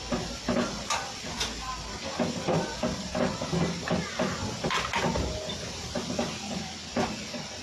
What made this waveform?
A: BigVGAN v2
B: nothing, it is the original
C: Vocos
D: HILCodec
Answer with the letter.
B